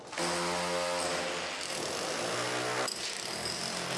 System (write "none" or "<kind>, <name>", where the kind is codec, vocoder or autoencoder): none